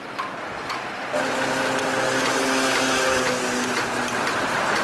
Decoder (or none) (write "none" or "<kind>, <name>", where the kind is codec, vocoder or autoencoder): none